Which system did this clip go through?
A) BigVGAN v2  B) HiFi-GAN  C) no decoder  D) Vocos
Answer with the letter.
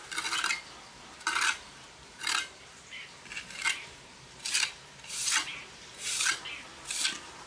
C